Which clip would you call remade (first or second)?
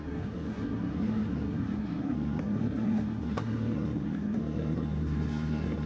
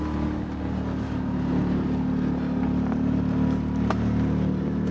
first